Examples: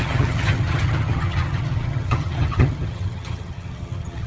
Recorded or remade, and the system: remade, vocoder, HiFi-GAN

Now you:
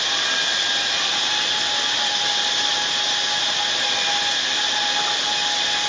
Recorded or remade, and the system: recorded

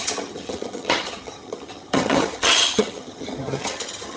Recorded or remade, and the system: remade, vocoder, HiFi-GAN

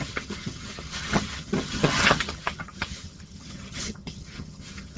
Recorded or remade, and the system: remade, vocoder, HiFi-GAN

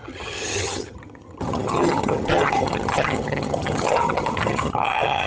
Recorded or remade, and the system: remade, vocoder, HiFi-GAN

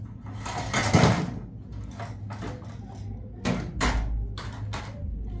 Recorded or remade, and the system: recorded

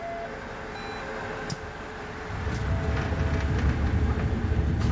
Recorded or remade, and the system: recorded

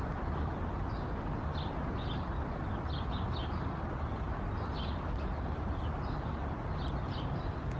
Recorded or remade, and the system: recorded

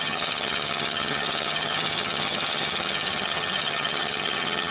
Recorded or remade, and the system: remade, vocoder, HiFi-GAN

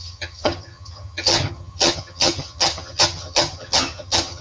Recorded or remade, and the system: remade, vocoder, HiFi-GAN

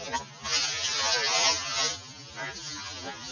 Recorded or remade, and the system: recorded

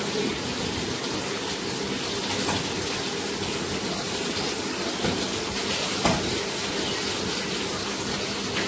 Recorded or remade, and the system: recorded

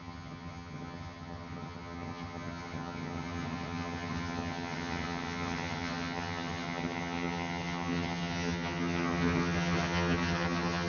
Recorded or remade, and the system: remade, vocoder, HiFi-GAN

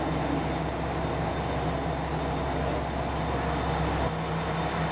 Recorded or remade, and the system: recorded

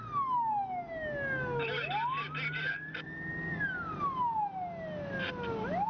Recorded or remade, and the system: recorded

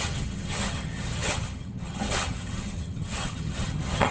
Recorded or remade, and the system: remade, vocoder, HiFi-GAN